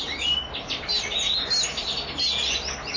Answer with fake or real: real